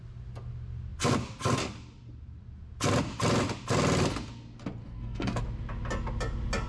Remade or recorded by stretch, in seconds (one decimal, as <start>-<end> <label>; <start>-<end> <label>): 0.0-4.8 recorded; 4.8-5.4 remade; 5.4-6.7 recorded